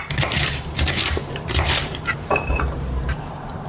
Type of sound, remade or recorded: remade